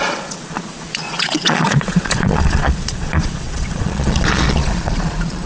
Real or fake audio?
fake